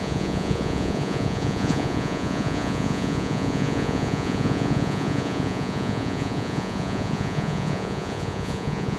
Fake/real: fake